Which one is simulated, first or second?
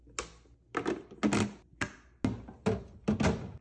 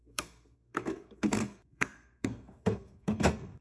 second